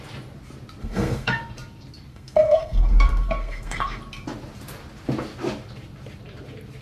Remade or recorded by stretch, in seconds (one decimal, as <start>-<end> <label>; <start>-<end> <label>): 0.0-0.8 recorded; 0.8-1.4 remade; 1.4-2.1 recorded; 2.1-4.0 remade; 4.0-6.8 recorded